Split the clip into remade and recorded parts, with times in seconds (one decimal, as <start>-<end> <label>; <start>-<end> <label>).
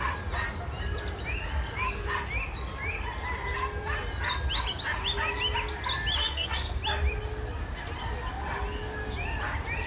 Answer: 0.0-6.2 recorded; 6.2-6.8 remade; 6.8-9.9 recorded